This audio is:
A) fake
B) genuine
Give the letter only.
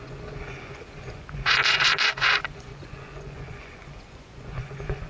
A